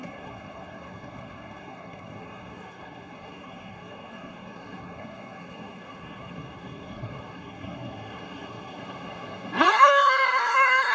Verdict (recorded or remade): remade